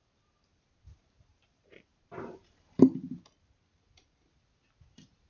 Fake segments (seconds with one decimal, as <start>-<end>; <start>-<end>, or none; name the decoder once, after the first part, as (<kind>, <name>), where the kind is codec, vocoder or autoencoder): 1.3-3.6 (vocoder, BigVGAN v2)